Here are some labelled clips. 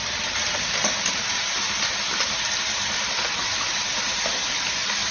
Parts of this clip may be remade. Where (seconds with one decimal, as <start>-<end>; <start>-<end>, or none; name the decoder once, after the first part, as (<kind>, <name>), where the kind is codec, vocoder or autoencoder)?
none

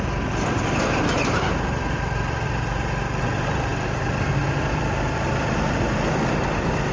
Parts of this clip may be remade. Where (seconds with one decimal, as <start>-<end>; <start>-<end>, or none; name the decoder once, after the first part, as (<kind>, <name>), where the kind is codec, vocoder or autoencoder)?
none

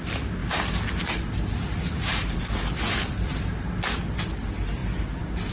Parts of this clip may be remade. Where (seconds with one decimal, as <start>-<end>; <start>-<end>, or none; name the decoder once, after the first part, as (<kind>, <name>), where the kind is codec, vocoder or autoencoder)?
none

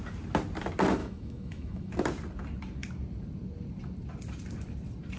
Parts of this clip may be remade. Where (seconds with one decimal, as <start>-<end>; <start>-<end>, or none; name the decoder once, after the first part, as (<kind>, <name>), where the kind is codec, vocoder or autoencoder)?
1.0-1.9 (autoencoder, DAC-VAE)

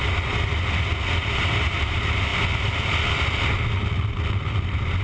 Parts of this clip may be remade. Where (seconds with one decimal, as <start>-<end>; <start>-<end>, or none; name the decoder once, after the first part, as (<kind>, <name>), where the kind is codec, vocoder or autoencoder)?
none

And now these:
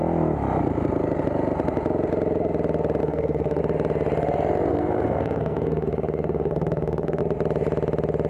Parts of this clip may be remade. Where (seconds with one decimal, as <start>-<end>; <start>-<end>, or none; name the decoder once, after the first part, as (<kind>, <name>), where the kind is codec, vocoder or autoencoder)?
3.0-3.6 (codec, SNAC); 4.7-7.2

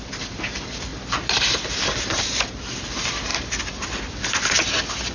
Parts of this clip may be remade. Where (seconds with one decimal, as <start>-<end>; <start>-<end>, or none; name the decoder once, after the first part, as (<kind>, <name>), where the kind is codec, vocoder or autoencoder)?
none